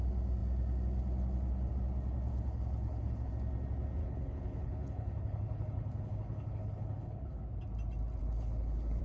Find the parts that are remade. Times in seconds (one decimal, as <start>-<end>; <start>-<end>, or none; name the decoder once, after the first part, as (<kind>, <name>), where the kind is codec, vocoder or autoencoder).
2.3-3.3 (codec, HILCodec); 4.0-7.4; 8.2-9.0

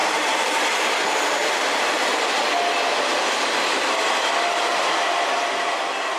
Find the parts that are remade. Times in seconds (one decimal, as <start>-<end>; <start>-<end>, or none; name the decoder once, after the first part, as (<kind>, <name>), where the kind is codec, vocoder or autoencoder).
0.0-2.4 (vocoder, BigVGAN v2)

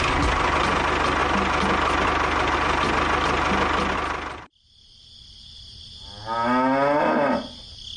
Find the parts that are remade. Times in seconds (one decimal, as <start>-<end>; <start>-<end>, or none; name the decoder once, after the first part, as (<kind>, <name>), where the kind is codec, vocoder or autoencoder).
none

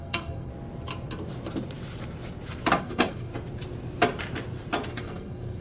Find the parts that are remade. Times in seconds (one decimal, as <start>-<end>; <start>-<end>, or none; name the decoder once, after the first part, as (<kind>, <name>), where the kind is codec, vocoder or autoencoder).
0.0-0.5 (codec, SNAC); 2.8-3.3; 4.9-5.6